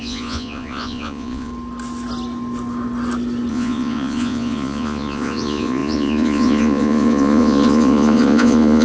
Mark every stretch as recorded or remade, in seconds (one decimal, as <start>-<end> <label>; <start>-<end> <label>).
0.0-1.5 remade; 1.5-3.5 recorded; 3.5-8.8 remade